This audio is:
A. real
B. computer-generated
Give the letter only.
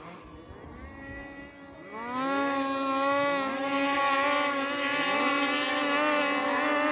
A